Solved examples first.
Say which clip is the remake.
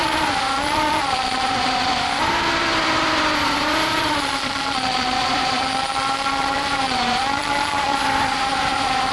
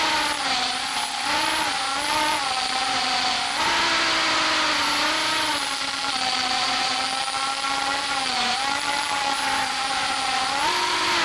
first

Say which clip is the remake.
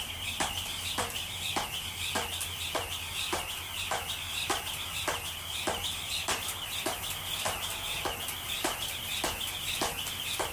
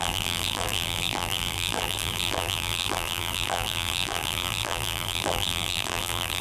second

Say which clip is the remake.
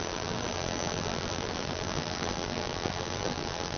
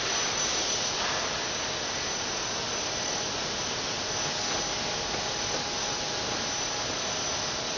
first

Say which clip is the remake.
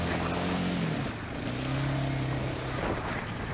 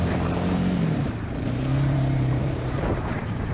second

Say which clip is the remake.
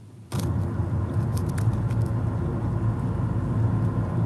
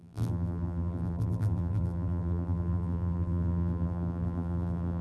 second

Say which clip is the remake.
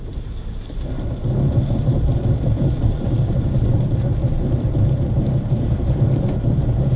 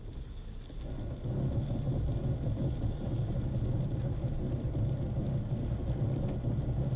first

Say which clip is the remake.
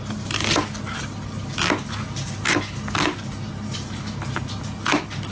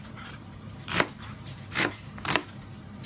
second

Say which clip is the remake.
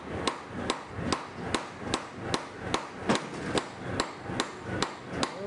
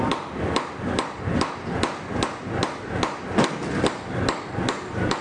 second